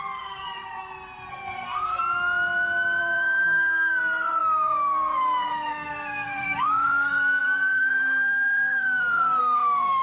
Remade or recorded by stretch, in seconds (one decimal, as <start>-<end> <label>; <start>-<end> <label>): 0.0-0.8 remade; 0.8-1.3 recorded; 1.3-2.0 remade; 2.0-3.0 recorded; 3.0-10.0 remade